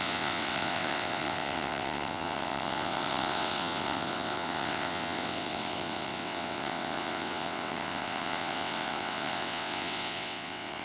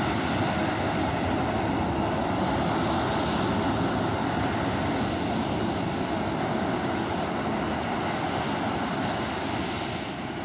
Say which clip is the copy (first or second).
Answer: first